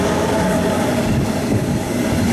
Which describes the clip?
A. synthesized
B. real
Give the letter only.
A